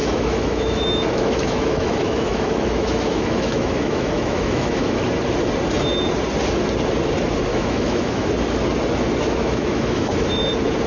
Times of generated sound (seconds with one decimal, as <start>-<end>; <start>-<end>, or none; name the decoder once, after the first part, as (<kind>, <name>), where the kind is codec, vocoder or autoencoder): 0.0-5.1 (autoencoder, DAC-VAE); 7.5-8.3; 9.4-10.4

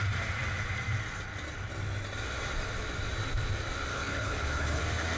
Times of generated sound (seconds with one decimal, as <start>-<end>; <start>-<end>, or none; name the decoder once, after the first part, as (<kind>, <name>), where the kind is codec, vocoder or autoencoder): 3.9-4.8 (codec, HILCodec)

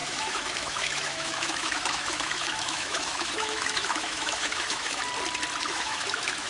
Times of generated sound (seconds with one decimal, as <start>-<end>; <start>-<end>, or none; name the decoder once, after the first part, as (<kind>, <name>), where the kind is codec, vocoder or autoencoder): 0.0-5.0 (autoencoder, DAC-VAE); 5.6-6.5

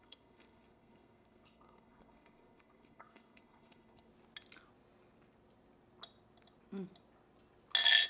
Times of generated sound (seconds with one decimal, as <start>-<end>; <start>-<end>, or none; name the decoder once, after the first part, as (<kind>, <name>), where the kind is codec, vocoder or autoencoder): 0.0-4.1 (codec, SNAC)

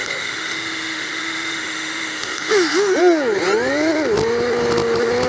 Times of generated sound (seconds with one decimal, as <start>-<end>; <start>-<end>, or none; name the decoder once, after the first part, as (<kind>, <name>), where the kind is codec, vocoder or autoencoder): 0.0-3.0 (autoencoder, DAC-VAE)

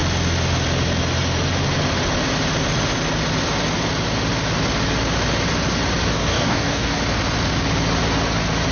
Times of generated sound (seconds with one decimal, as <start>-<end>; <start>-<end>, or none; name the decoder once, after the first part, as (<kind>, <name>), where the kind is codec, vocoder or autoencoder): 6.1-7.0 (codec, DAC)

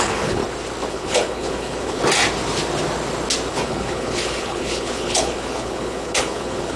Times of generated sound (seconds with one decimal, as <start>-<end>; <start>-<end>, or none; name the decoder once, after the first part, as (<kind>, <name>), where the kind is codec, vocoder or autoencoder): 0.0-0.4 (codec, HILCodec); 0.9-2.0; 3.5-6.8